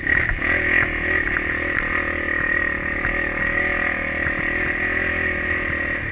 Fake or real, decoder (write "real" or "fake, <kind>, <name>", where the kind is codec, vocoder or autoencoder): real